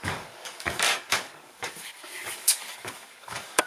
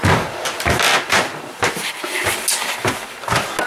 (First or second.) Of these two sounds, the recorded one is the second